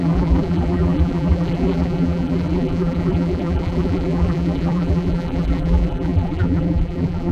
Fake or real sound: fake